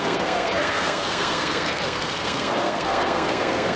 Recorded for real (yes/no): no